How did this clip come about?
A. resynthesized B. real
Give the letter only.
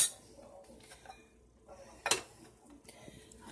B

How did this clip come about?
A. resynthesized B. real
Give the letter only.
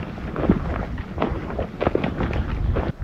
B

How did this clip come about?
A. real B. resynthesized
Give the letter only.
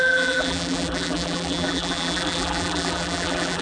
B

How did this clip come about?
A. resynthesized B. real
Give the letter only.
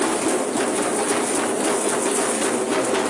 B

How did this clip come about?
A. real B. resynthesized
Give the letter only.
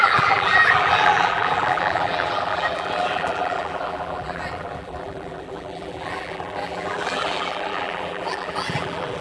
B